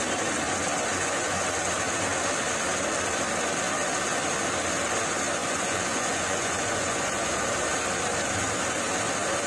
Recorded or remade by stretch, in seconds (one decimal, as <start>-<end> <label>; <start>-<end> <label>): 0.0-0.9 recorded; 0.9-1.4 remade; 1.4-5.4 recorded; 5.4-7.3 remade; 7.3-9.5 recorded